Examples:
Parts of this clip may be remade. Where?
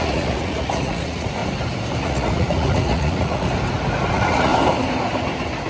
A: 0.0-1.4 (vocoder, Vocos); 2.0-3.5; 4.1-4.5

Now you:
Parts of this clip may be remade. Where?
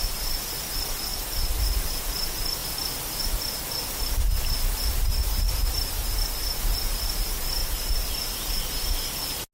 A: 1.1-1.6 (vocoder, BigVGAN v2); 5.6-6.6; 7.6-8.1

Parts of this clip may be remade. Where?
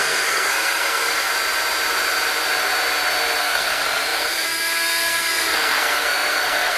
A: 0.0-1.3 (codec, SNAC); 3.4-6.8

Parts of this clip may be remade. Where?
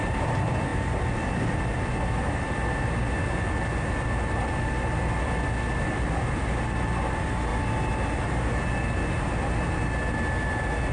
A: none